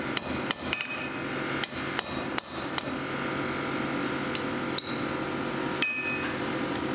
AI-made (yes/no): no